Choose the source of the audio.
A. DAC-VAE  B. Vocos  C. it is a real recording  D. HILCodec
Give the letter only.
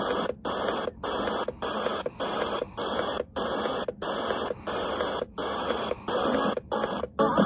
C